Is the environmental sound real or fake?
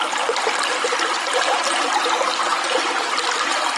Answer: real